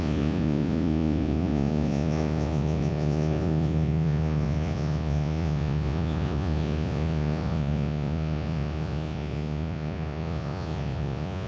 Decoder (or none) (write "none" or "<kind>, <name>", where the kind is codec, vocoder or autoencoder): vocoder, Vocos